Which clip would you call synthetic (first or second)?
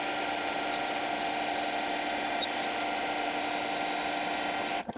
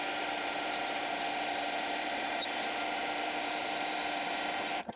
second